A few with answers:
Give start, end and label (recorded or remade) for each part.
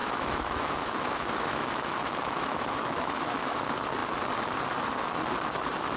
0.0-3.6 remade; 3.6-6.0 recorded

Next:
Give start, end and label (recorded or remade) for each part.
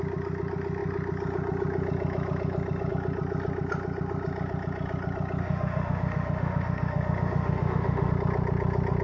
0.0-5.4 recorded; 5.4-8.1 remade; 8.1-9.0 recorded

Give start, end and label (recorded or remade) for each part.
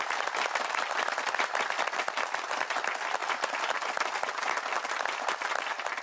0.0-6.0 recorded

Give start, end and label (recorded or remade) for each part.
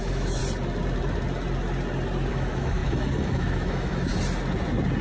0.0-0.4 remade; 0.4-2.3 recorded; 2.3-4.1 remade; 4.1-5.0 recorded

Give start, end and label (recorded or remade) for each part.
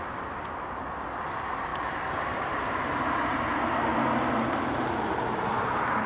0.0-6.1 recorded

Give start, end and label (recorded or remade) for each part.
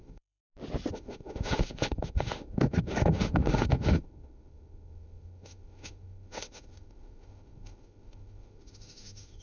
0.0-0.4 remade; 0.4-0.9 recorded; 0.9-9.4 remade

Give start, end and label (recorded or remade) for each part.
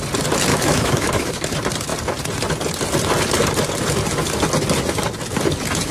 0.0-0.5 recorded; 0.5-1.5 remade; 1.5-5.9 recorded